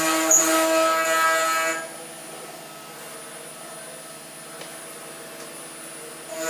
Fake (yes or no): no